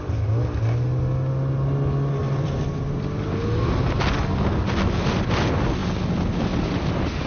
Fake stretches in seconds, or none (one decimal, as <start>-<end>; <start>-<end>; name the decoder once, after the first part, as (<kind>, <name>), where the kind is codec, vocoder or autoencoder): 2.2-3.6 (vocoder, BigVGAN v2)